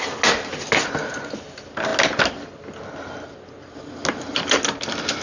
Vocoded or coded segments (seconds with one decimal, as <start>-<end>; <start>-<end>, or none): none